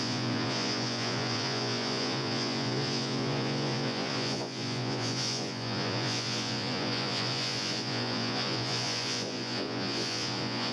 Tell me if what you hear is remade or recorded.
remade